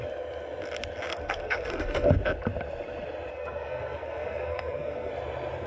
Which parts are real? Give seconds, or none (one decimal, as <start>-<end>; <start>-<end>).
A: 0.0-1.1; 2.1-3.3; 5.1-5.7